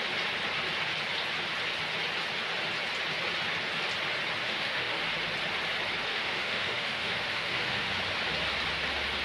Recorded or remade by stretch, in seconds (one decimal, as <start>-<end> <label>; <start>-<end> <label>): 0.0-4.4 recorded; 4.4-5.0 remade; 5.0-6.1 recorded; 6.1-7.9 remade; 7.9-9.2 recorded